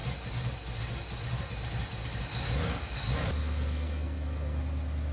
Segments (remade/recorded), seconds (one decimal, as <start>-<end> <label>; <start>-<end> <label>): 0.0-3.4 recorded; 3.4-4.6 remade; 4.6-5.1 recorded

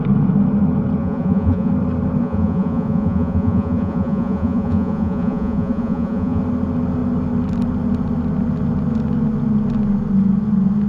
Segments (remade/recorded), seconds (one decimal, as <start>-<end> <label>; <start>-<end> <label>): 0.0-1.0 recorded; 1.0-1.7 remade; 1.7-2.2 recorded; 2.2-6.4 remade; 6.4-10.9 recorded

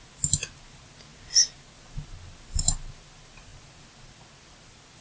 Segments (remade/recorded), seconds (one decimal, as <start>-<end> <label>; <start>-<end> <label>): 0.0-5.0 recorded

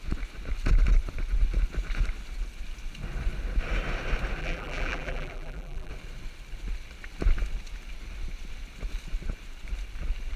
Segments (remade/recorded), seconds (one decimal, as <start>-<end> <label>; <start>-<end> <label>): 0.0-4.4 recorded; 4.4-5.9 remade; 5.9-10.4 recorded

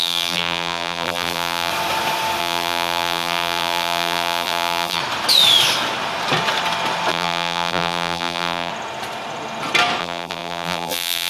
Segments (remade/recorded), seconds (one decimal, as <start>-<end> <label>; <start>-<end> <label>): 0.0-1.7 remade; 1.7-2.4 recorded; 2.4-5.0 remade; 5.0-7.1 recorded; 7.1-8.7 remade; 8.7-10.0 recorded; 10.0-11.3 remade

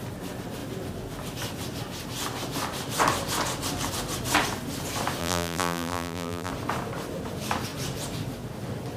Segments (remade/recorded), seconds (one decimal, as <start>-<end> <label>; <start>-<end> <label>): 0.0-5.2 recorded; 5.2-6.5 remade; 6.5-9.0 recorded

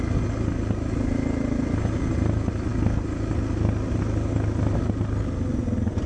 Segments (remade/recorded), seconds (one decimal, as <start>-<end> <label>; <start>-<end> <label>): 0.0-6.1 recorded

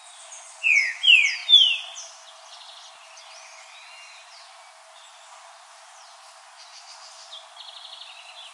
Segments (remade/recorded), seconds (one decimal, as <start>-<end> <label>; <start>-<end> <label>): 0.0-8.5 recorded